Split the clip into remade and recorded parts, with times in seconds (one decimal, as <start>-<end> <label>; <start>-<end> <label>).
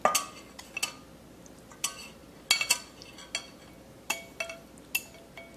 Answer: 0.0-5.6 recorded